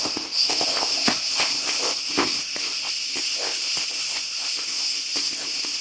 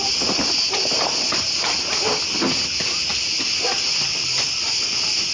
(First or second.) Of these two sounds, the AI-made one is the first